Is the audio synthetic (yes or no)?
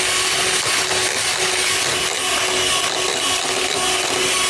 no